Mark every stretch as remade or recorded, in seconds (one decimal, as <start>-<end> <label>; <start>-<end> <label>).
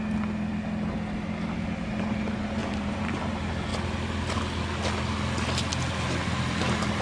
0.0-2.6 recorded; 2.6-3.2 remade; 3.2-7.0 recorded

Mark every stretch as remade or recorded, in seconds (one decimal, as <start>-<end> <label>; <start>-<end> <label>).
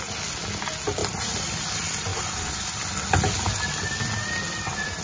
0.0-1.0 recorded; 1.0-1.7 remade; 1.7-2.1 recorded; 2.1-2.8 remade; 2.8-5.0 recorded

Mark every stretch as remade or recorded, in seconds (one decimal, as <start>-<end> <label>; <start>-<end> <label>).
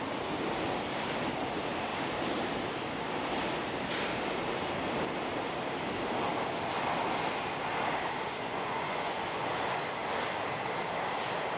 0.0-8.4 recorded; 8.4-9.6 remade; 9.6-11.6 recorded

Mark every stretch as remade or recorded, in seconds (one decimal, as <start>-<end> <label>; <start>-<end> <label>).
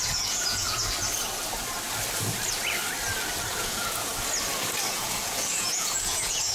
0.0-0.8 remade; 0.8-3.5 recorded; 3.5-4.1 remade; 4.1-4.9 recorded; 4.9-6.5 remade